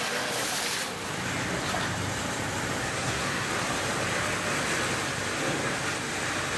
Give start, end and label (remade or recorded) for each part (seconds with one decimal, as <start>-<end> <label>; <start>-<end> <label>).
0.0-2.8 recorded; 2.8-3.5 remade; 3.5-6.6 recorded